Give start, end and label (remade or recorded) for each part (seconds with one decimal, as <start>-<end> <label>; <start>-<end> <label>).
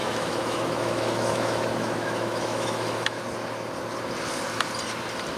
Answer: 0.0-3.2 remade; 3.2-5.4 recorded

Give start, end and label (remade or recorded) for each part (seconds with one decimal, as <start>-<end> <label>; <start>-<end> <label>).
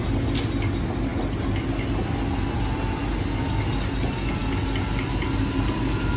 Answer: 0.0-6.2 recorded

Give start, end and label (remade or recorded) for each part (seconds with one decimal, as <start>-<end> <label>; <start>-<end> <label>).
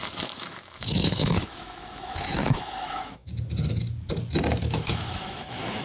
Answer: 0.0-3.3 remade; 3.3-4.6 recorded; 4.6-5.8 remade